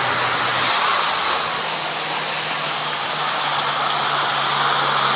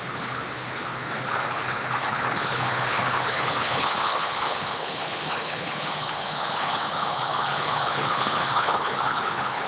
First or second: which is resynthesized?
second